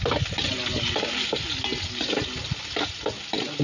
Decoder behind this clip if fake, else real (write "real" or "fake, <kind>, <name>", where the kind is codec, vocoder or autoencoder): real